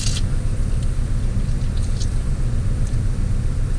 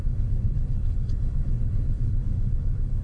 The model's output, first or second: second